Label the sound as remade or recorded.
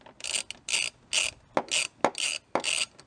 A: recorded